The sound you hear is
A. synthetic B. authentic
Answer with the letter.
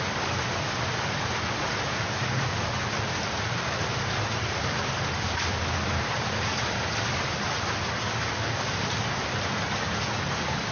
A